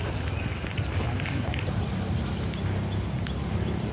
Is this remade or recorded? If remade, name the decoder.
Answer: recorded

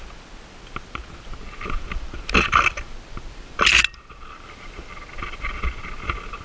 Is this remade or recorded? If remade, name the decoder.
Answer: recorded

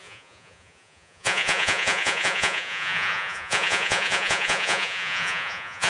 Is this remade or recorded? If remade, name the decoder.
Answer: remade, vocoder, Vocos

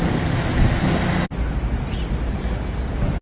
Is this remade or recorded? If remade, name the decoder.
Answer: recorded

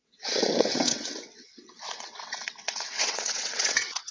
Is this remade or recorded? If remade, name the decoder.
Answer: remade, vocoder, WaveNeXt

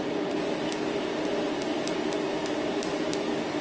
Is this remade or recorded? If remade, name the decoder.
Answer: recorded